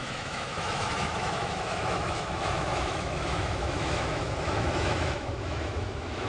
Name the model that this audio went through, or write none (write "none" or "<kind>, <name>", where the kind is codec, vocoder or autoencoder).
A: autoencoder, DAC-VAE